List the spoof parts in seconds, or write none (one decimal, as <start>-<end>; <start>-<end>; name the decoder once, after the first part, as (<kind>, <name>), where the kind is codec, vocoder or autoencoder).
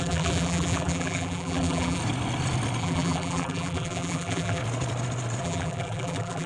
0.0-2.0 (vocoder, BigVGAN v2); 2.8-4.6; 5.4-6.5